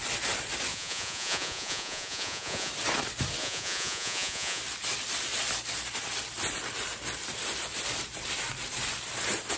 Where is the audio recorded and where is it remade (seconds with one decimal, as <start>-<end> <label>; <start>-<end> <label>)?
0.0-0.7 recorded; 0.7-2.7 remade; 2.7-3.4 recorded; 3.4-4.6 remade; 4.6-9.6 recorded